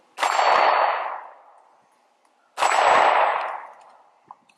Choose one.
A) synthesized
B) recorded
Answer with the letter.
B